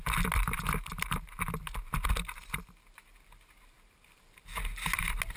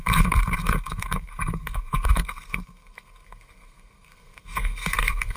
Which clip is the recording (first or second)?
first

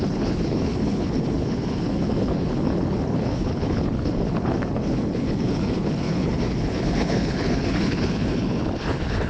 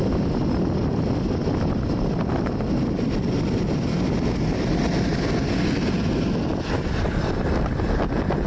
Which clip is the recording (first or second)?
second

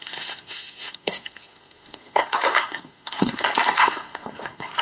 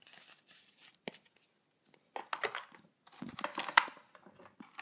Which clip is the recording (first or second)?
second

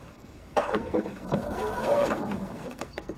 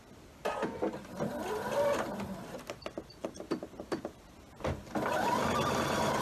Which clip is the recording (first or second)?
second